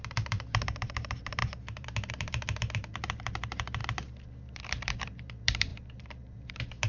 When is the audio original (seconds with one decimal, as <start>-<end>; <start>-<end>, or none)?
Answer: 3.8-4.6